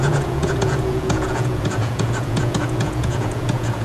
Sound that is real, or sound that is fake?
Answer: fake